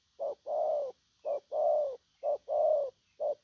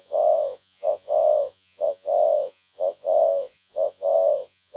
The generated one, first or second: second